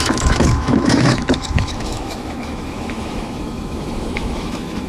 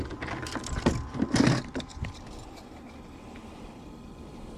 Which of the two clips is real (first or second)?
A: second